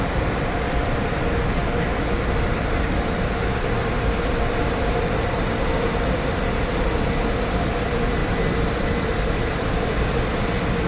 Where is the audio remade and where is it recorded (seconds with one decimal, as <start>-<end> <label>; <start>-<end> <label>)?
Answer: 0.0-8.2 recorded; 8.2-10.1 remade; 10.1-10.9 recorded